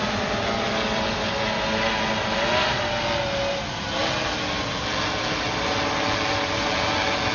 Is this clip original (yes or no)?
yes